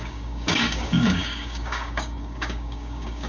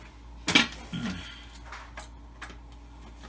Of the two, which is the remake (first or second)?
first